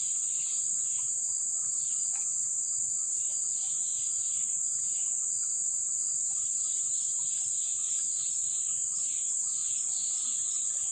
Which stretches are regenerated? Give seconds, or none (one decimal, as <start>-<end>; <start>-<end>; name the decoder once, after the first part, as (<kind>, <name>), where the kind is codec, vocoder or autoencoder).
0.0-3.9 (vocoder, BigVGAN v2); 6.3-9.6